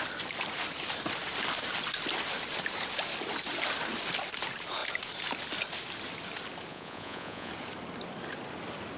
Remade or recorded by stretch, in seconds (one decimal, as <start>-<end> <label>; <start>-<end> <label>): 0.0-6.7 recorded; 6.7-7.5 remade; 7.5-9.0 recorded

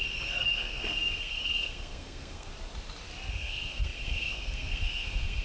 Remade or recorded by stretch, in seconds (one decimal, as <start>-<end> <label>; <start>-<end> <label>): 0.0-2.5 remade; 2.5-3.3 recorded; 3.3-5.4 remade